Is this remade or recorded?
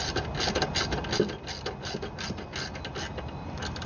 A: recorded